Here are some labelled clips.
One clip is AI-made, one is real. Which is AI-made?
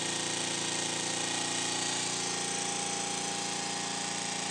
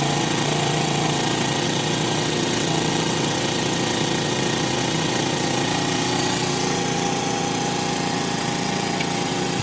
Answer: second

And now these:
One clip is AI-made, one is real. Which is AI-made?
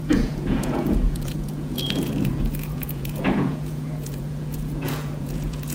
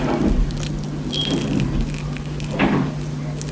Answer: first